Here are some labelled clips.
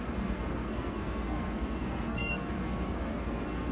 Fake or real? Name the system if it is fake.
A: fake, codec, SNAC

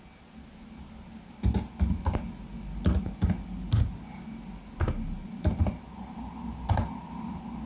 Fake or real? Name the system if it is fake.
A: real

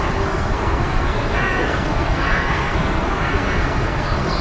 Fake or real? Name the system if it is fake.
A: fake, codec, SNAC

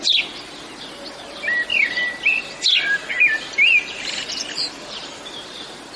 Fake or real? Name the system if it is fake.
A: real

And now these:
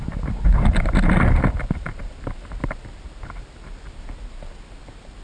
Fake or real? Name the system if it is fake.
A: real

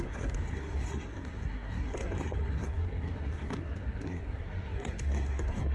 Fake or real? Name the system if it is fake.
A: fake, codec, SNAC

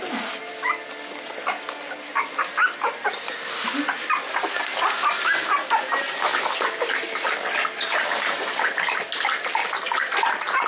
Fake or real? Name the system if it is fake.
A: real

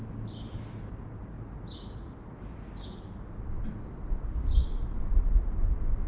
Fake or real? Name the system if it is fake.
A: real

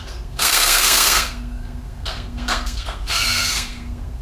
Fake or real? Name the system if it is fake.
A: fake, codec, SNAC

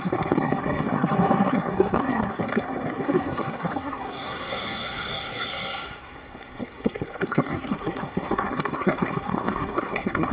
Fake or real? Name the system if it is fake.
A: fake, codec, SNAC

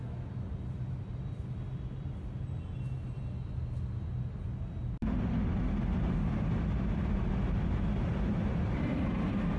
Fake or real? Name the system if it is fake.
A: real